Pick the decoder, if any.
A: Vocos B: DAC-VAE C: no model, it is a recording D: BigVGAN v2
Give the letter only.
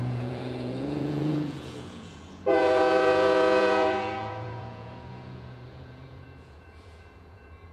A